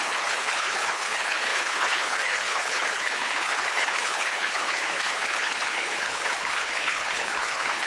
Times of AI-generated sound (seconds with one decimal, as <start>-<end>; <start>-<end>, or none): 0.0-7.9